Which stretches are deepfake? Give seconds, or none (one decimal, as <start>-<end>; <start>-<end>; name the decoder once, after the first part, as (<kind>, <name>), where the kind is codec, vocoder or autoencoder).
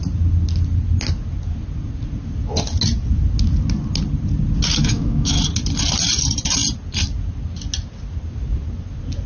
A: 4.8-5.4 (autoencoder, DAC-VAE)